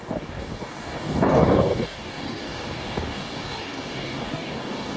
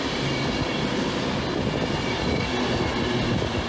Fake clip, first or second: first